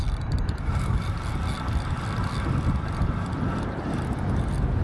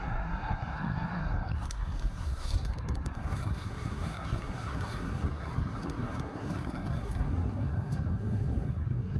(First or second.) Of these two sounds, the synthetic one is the second